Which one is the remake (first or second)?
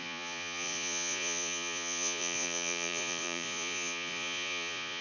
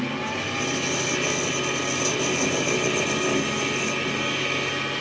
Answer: first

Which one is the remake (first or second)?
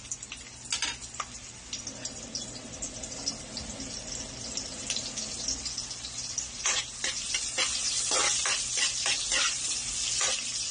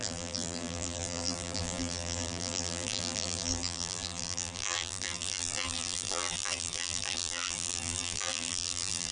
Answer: second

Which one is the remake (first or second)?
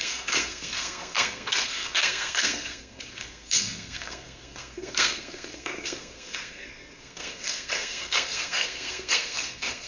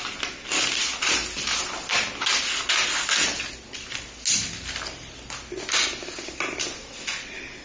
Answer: first